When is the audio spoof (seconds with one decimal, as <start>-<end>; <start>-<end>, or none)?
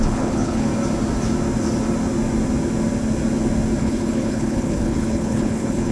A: 0.0-0.7; 3.8-5.9